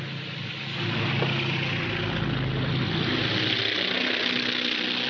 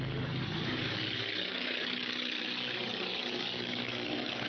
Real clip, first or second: first